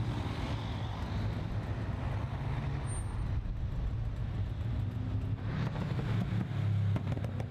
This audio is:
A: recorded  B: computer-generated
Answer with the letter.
A